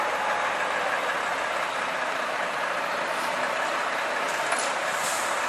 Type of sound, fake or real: real